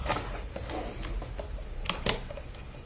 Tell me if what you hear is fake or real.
real